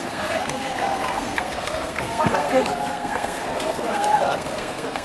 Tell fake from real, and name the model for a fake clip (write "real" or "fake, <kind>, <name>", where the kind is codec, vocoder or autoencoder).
fake, codec, SNAC